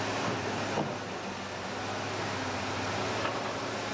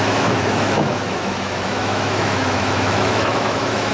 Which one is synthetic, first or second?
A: second